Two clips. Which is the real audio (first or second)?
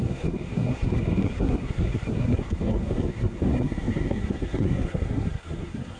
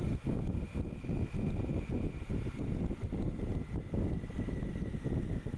second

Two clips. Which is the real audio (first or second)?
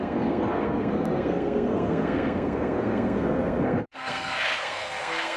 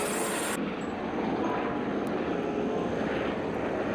second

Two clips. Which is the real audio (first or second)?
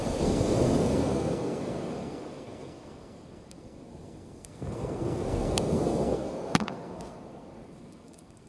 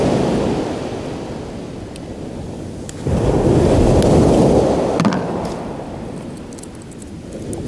second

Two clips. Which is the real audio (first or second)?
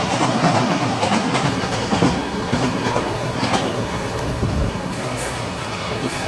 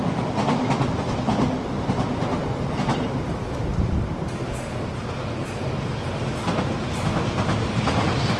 second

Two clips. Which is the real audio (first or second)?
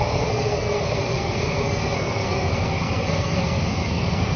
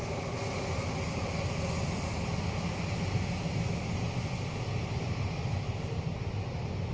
second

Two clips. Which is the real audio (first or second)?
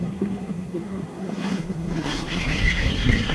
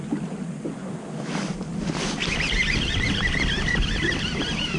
second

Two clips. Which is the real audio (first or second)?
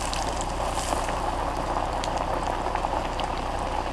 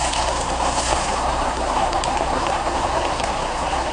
first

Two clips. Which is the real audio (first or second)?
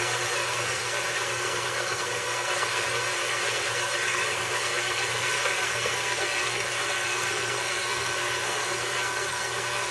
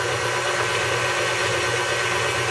second